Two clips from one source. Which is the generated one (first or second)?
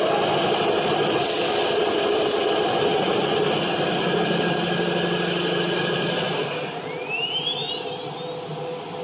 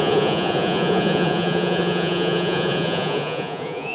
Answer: second